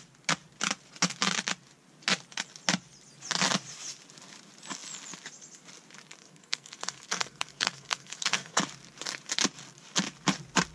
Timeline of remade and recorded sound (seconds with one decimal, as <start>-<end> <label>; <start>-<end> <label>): 0.0-6.2 recorded; 6.2-8.6 remade; 8.6-10.7 recorded